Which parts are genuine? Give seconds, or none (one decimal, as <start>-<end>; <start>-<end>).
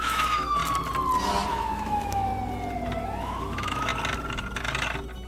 0.6-1.5; 2.3-3.2; 3.9-5.3